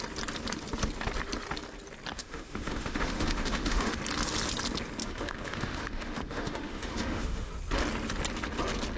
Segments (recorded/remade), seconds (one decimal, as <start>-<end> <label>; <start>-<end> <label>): 0.0-2.1 recorded; 2.1-4.0 remade; 4.0-5.0 recorded; 5.0-7.5 remade; 7.5-9.0 recorded